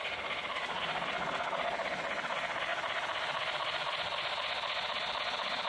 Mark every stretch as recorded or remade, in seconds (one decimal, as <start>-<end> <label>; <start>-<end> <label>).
0.0-5.7 recorded